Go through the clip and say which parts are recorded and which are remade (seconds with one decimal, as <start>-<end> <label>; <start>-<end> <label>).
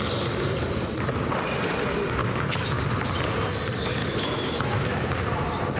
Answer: 0.0-2.2 recorded; 2.2-2.8 remade; 2.8-4.0 recorded; 4.0-5.1 remade; 5.1-5.8 recorded